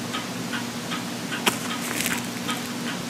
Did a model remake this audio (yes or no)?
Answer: no